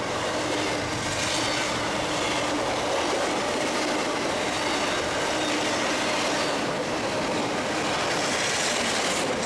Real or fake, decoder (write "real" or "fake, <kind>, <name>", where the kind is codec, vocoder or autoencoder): real